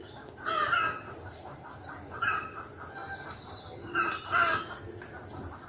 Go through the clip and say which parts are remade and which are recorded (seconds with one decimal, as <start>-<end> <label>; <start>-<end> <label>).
0.0-5.7 recorded